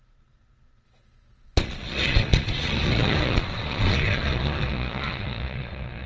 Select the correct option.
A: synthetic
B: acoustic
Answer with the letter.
A